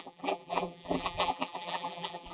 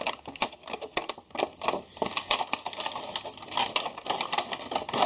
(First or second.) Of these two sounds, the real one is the second